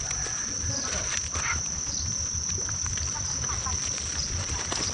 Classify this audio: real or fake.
real